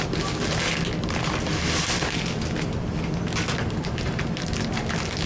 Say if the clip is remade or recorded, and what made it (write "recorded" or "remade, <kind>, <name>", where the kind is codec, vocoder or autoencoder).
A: recorded